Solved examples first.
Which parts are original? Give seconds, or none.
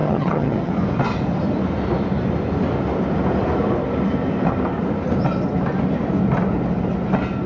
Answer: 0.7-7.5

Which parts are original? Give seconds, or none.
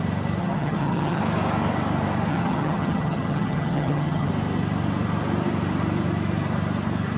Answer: 0.0-0.4; 1.2-2.3; 4.3-7.2